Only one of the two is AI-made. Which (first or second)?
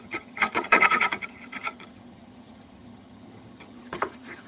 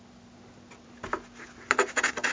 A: first